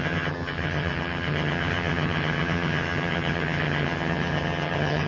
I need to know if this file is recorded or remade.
remade